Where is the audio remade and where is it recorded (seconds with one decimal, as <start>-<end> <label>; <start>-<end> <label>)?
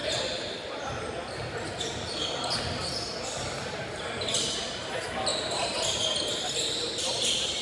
0.0-7.6 recorded